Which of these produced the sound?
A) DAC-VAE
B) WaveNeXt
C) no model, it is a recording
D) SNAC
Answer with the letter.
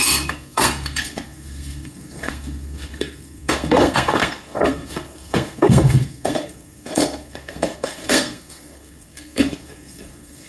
D